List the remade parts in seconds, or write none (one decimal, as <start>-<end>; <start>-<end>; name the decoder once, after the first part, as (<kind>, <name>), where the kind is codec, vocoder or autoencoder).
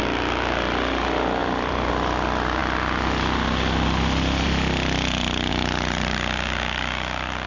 1.4-1.9 (vocoder, BigVGAN v2)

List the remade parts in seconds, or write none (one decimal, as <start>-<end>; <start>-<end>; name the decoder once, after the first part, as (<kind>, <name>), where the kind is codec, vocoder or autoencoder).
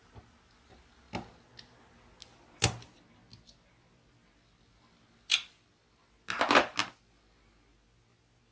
none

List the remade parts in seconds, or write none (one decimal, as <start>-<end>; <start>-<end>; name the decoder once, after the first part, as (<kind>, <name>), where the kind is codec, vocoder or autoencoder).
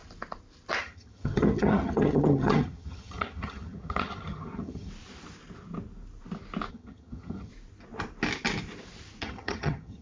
0.8-4.9 (vocoder, HiFi-GAN); 6.7-7.5; 9.2-10.0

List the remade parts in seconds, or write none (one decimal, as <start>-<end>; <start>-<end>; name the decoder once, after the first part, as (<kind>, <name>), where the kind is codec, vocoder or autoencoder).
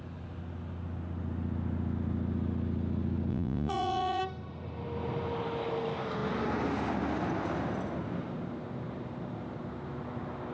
3.3-4.2 (vocoder, Vocos)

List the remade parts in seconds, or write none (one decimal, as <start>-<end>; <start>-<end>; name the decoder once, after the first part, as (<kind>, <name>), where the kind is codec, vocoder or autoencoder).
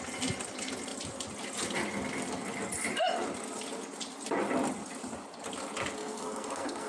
6.0-6.9 (codec, SNAC)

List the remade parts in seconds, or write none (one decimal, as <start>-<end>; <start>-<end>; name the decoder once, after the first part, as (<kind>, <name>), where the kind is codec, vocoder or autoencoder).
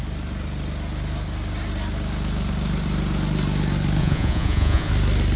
4.0-4.9 (vocoder, Vocos)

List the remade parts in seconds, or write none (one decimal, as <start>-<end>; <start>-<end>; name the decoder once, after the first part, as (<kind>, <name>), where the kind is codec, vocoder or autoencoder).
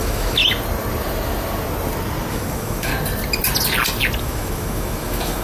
0.0-0.4 (autoencoder, DAC-VAE); 2.3-2.9; 4.2-5.4